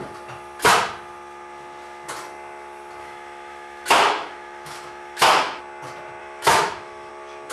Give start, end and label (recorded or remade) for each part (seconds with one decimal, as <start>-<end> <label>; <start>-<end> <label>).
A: 0.0-3.0 recorded; 3.0-5.6 remade; 5.6-6.2 recorded; 6.2-7.1 remade; 7.1-7.5 recorded